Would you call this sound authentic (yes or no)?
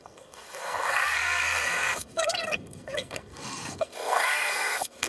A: no